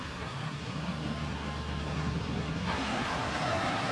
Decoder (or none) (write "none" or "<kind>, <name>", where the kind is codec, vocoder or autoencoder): codec, SNAC